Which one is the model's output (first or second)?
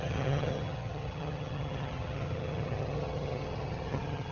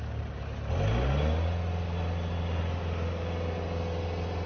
first